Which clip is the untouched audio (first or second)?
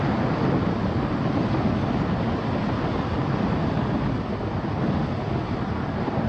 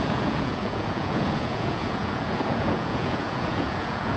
first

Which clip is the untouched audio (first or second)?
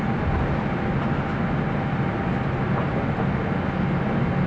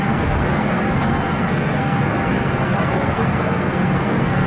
first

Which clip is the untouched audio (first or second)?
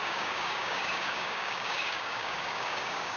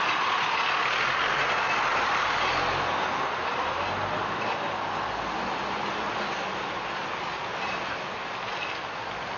second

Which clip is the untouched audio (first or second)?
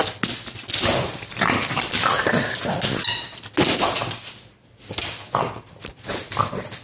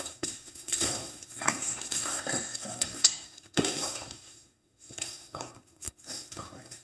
first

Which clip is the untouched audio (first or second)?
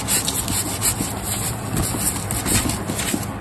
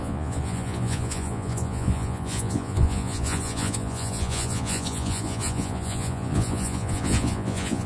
first